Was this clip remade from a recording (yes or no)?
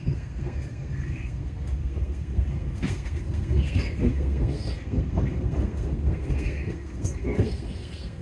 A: yes